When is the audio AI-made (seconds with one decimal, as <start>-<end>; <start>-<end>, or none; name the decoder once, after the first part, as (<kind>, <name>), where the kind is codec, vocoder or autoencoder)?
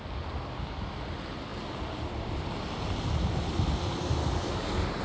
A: 4.2-5.0 (codec, DAC)